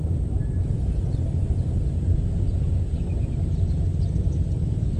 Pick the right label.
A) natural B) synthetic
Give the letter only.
A